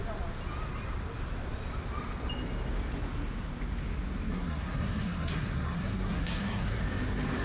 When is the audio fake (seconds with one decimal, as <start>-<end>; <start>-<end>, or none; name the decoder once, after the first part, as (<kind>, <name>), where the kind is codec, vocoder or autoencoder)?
4.3-6.8 (codec, SNAC)